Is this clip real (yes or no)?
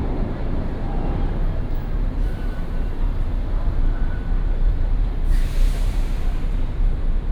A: no